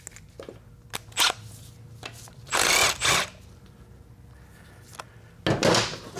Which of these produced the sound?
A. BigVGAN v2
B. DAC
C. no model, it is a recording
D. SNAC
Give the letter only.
C